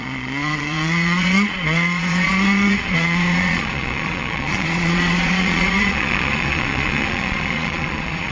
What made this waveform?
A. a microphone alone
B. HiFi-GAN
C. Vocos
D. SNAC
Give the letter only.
C